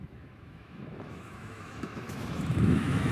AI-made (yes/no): yes